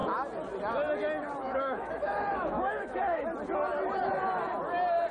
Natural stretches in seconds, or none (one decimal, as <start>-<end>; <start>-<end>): 0.0-1.4; 3.2-5.1